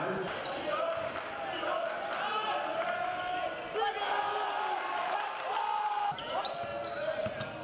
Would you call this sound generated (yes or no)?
no